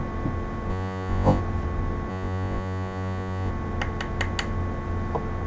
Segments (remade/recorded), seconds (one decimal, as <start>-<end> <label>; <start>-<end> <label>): 0.0-0.7 recorded; 0.7-1.4 remade; 1.4-2.1 recorded; 2.1-3.5 remade; 3.5-5.5 recorded